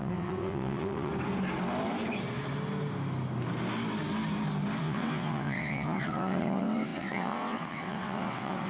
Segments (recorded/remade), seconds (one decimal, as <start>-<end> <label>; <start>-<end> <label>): 0.0-1.1 remade; 1.1-4.8 recorded; 4.8-8.7 remade